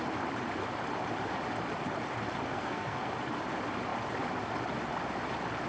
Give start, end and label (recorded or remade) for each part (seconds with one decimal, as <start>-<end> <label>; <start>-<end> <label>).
0.0-2.5 recorded; 2.5-3.1 remade; 3.1-5.7 recorded